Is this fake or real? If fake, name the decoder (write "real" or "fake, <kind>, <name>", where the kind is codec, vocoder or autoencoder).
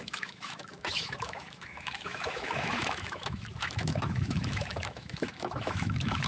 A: fake, autoencoder, DAC-VAE